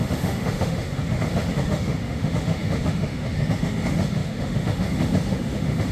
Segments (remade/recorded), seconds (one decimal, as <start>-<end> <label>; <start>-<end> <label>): 0.0-5.9 remade